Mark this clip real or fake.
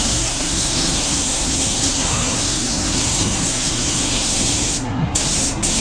fake